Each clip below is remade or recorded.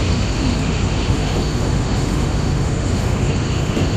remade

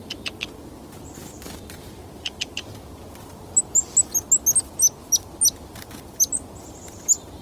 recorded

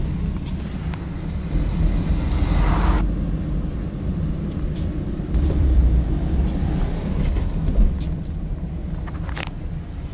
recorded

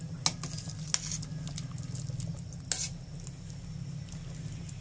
recorded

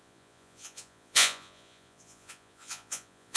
remade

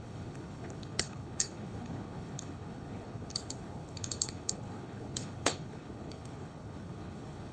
remade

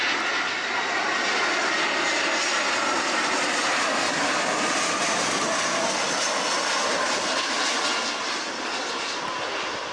recorded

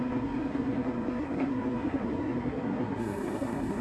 remade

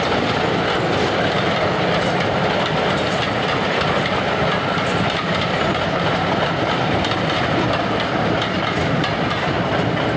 recorded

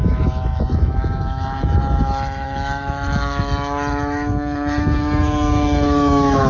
remade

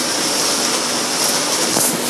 recorded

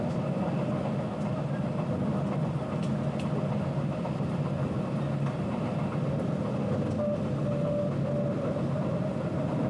recorded